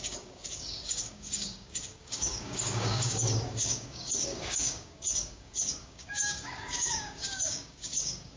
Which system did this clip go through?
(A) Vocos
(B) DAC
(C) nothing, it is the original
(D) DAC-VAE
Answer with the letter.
B